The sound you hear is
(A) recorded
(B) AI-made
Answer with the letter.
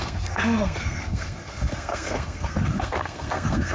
B